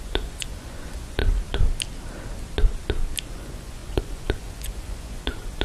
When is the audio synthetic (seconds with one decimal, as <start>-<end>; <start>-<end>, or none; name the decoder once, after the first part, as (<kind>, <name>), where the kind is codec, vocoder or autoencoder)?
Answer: 0.0-1.2 (vocoder, Vocos); 3.3-5.6